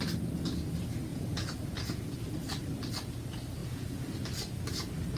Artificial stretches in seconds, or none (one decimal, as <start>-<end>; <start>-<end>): 1.1-2.2; 3.6-4.1